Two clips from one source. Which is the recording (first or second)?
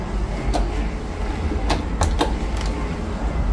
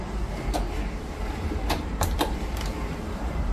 first